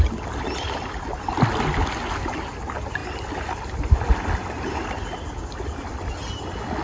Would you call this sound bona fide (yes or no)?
yes